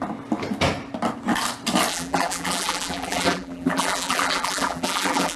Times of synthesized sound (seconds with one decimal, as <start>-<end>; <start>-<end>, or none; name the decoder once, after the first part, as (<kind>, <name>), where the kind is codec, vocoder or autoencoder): 1.9-5.4 (vocoder, BigVGAN v2)